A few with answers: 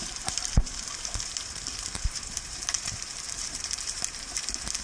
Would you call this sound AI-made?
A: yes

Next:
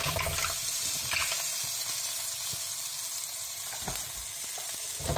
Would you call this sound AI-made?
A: no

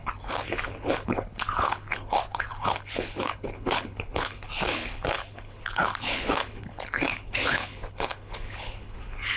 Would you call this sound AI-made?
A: yes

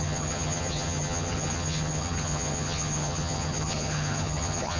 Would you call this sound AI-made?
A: yes